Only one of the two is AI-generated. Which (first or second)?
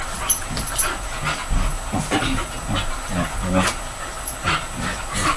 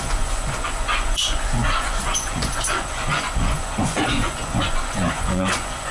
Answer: second